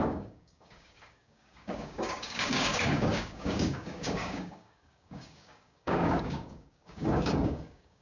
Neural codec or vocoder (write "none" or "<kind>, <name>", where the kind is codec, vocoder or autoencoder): codec, DAC